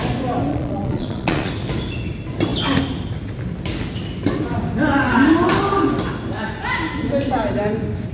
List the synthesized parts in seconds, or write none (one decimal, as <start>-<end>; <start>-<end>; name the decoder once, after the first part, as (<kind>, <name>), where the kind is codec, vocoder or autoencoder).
0.5-1.5 (vocoder, Vocos)